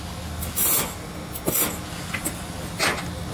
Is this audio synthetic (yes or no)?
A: no